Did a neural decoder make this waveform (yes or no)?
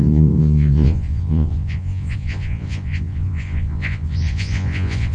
yes